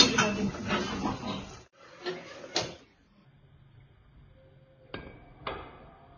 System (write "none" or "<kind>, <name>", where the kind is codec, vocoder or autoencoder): none